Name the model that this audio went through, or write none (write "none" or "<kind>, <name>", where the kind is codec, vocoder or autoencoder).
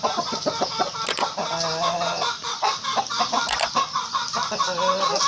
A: none